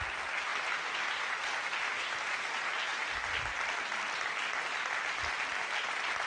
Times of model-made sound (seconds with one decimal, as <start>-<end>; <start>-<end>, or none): none